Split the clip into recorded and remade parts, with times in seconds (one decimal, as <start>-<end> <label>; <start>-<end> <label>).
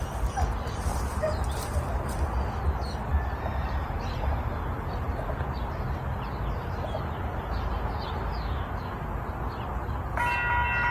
0.0-0.9 recorded; 0.9-1.6 remade; 1.6-10.9 recorded